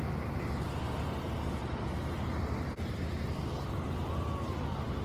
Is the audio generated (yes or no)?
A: no